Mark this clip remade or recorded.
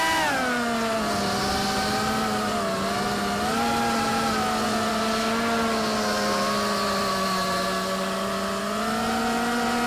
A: recorded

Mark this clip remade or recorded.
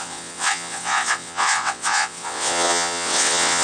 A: remade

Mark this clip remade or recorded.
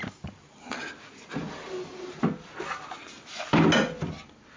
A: recorded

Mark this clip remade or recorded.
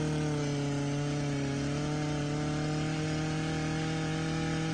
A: recorded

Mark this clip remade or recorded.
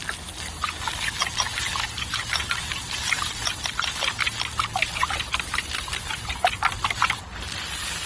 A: recorded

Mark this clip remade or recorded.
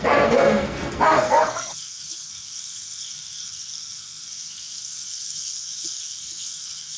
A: remade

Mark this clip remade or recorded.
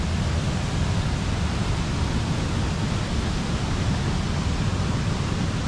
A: recorded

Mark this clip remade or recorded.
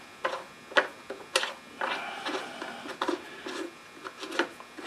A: recorded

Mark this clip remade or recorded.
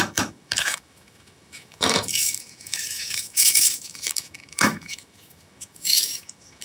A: remade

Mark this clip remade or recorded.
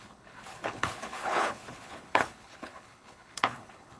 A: remade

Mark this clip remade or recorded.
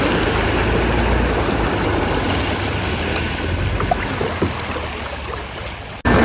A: recorded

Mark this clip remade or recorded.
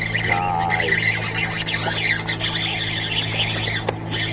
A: recorded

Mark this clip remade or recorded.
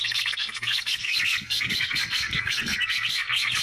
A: remade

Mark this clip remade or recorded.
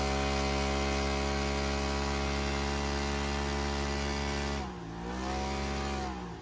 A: recorded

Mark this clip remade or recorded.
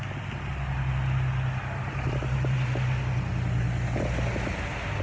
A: recorded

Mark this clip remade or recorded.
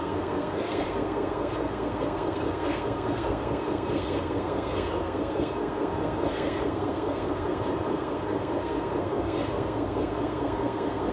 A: remade